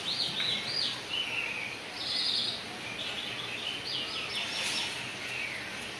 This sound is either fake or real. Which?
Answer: real